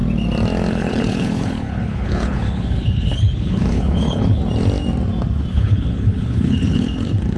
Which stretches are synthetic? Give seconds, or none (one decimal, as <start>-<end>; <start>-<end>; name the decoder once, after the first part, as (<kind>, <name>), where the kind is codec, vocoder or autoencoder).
0.7-4.4 (codec, HILCodec); 5.5-7.4